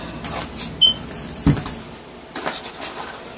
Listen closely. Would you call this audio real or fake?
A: real